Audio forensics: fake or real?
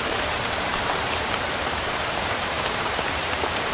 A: fake